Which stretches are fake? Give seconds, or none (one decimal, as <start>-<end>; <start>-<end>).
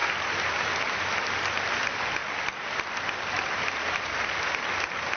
none